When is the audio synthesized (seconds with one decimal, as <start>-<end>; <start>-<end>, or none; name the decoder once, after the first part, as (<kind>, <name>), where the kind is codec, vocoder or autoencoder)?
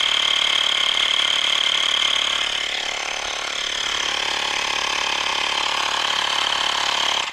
0.8-2.0 (vocoder, BigVGAN v2)